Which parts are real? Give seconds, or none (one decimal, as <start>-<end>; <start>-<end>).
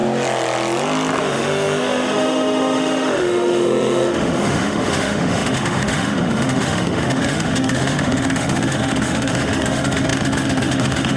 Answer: 0.0-1.2